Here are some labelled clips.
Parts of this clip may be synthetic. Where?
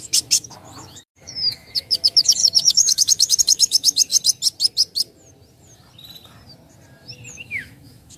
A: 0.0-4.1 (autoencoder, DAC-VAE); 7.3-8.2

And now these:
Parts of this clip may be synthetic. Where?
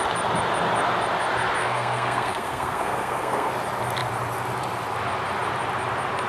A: 1.6-3.5 (codec, SNAC)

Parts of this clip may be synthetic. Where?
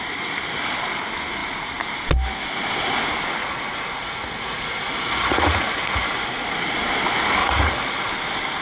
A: 3.4-6.6 (vocoder, Vocos); 7.4-8.1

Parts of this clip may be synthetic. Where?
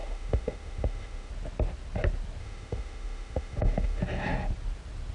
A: 0.0-1.3 (autoencoder, DAC-VAE); 2.4-4.0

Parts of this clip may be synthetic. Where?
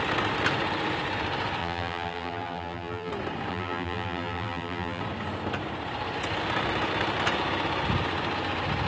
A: 1.6-3.1 (vocoder, BigVGAN v2); 3.5-5.0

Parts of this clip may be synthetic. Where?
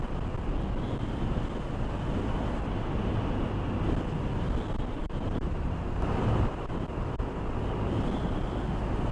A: 5.0-6.7 (vocoder, BigVGAN v2)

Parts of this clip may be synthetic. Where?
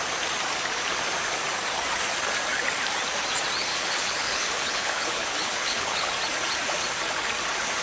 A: 3.7-6.1 (codec, HILCodec)